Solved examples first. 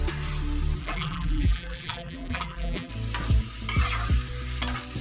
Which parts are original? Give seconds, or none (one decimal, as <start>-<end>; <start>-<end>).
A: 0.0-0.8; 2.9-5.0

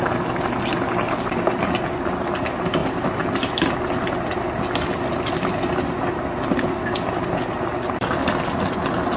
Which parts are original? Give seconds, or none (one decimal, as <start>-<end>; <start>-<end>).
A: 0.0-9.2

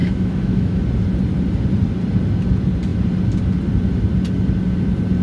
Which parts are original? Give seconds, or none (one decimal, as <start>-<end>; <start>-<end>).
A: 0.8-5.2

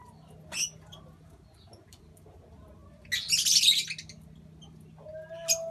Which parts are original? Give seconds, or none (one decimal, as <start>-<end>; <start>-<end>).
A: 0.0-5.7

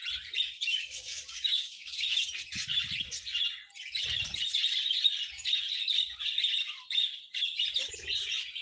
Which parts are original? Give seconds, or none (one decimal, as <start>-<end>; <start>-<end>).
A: 0.0-0.7; 2.2-8.6

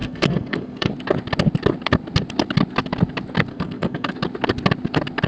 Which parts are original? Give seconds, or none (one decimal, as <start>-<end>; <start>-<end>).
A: 0.9-3.5; 4.1-5.3